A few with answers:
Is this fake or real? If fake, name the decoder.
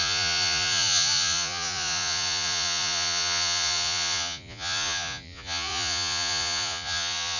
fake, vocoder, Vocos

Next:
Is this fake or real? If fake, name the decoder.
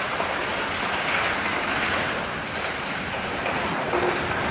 real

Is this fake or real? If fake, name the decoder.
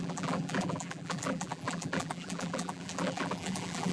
fake, vocoder, BigVGAN v2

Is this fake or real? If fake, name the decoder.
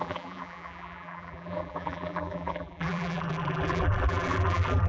fake, vocoder, BigVGAN v2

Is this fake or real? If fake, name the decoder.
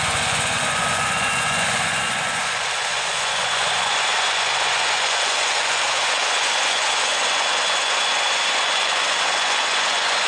fake, vocoder, Vocos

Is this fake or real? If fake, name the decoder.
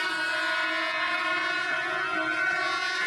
real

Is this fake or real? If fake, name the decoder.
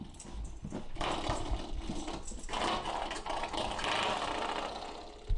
real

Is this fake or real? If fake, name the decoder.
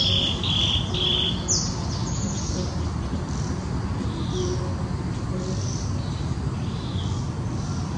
real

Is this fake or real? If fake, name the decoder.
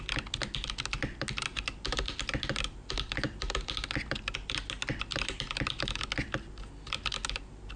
real